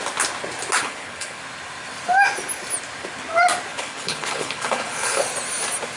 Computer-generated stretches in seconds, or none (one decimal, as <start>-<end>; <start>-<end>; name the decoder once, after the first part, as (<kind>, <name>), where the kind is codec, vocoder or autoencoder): 0.8-1.4 (codec, HILCodec); 3.7-5.2